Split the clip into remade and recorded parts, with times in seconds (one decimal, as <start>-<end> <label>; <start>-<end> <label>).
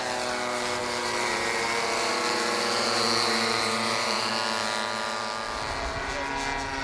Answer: 0.0-0.8 recorded; 0.8-4.3 remade; 4.3-6.8 recorded